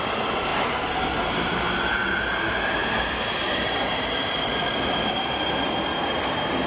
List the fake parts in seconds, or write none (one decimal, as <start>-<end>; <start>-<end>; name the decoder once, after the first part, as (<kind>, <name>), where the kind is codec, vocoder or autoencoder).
0.5-1.7 (vocoder, BigVGAN v2); 2.8-5.2